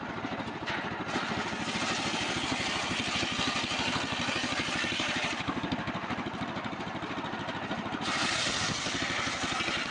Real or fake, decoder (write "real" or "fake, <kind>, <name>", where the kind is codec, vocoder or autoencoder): fake, vocoder, BigVGAN v2